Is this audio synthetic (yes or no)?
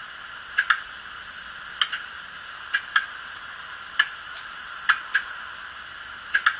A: no